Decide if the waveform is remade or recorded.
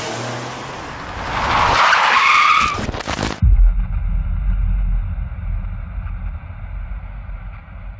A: recorded